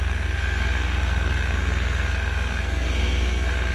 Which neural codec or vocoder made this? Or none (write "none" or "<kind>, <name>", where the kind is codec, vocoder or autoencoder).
codec, SNAC